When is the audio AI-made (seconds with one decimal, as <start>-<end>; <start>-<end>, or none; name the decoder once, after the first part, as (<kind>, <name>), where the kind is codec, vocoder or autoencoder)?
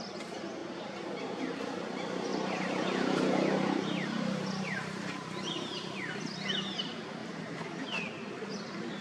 0.6-1.4 (vocoder, BigVGAN v2); 2.3-6.2; 7.2-8.0